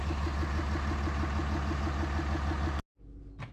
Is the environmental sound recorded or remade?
recorded